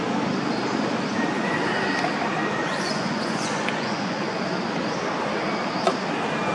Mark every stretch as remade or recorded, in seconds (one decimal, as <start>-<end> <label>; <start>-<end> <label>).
0.0-2.6 recorded; 2.6-4.4 remade; 4.4-6.5 recorded